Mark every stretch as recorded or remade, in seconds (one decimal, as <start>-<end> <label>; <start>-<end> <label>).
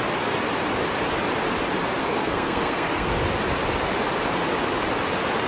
0.0-2.0 recorded; 2.0-3.1 remade; 3.1-5.5 recorded